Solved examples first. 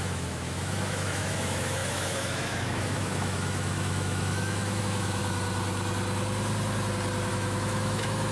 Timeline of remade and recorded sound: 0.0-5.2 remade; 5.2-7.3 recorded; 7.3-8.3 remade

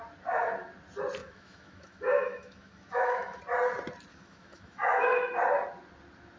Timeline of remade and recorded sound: 0.0-1.2 recorded; 1.2-3.4 remade; 3.4-4.1 recorded; 4.1-5.3 remade; 5.3-6.4 recorded

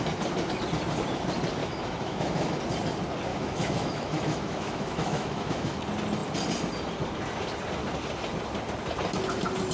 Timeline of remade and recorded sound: 0.0-1.6 recorded; 1.6-2.6 remade; 2.6-3.3 recorded; 3.3-5.8 remade; 5.8-9.7 recorded

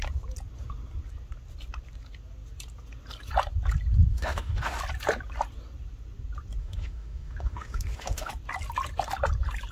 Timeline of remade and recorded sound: 0.0-4.1 recorded; 4.1-4.8 remade; 4.8-6.6 recorded; 6.6-8.3 remade; 8.3-9.7 recorded

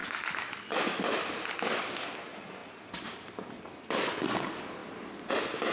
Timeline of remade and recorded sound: 0.0-1.0 remade; 1.0-5.7 recorded

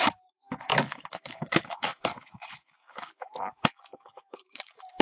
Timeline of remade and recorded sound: 0.0-5.0 remade